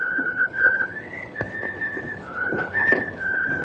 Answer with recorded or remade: remade